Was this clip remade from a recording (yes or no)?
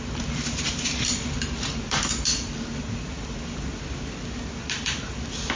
no